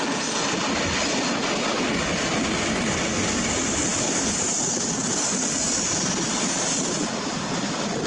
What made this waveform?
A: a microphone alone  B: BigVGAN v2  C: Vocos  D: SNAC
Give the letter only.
A